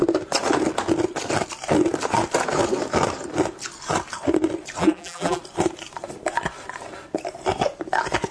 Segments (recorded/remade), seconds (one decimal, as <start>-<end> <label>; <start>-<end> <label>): 0.0-4.8 recorded; 4.8-5.4 remade; 5.4-8.3 recorded